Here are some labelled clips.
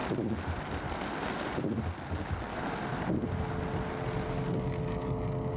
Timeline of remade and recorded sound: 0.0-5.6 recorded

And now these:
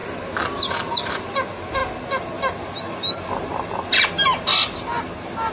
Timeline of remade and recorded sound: 0.0-1.2 remade; 1.2-5.5 recorded

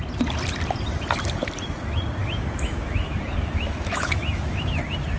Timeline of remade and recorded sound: 0.0-2.2 recorded; 2.2-4.8 remade; 4.8-5.2 recorded

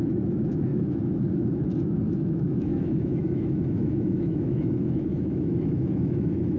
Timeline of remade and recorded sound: 0.0-6.6 remade

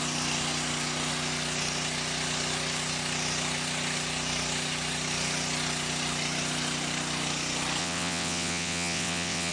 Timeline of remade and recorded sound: 0.0-7.8 recorded; 7.8-9.5 remade

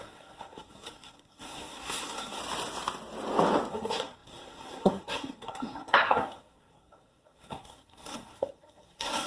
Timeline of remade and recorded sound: 0.0-2.4 remade; 2.4-3.7 recorded; 3.7-9.3 remade

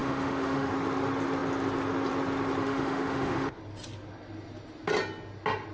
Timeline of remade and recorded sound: 0.0-0.7 remade; 0.7-2.6 recorded; 2.6-3.6 remade; 3.6-5.7 recorded